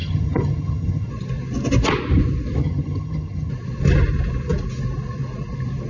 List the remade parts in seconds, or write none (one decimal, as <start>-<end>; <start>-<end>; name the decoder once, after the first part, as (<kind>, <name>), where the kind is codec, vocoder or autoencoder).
0.0-1.1 (vocoder, HiFi-GAN); 2.6-3.5